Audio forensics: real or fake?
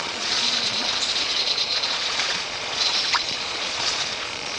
fake